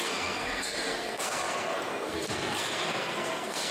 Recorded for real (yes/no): no